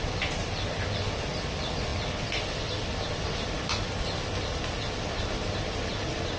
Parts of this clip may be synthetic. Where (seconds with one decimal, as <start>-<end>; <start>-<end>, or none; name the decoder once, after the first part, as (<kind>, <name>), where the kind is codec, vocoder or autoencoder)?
none